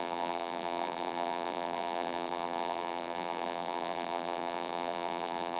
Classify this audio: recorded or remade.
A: remade